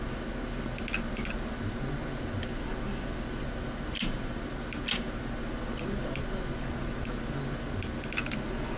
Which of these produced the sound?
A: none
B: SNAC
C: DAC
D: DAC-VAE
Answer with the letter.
A